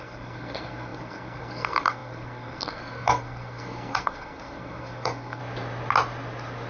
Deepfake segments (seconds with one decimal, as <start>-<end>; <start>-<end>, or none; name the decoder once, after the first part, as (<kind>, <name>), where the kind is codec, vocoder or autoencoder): 0.0-5.4 (codec, SNAC)